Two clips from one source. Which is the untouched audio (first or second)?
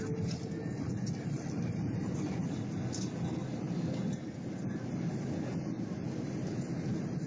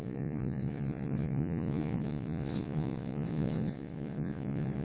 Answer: first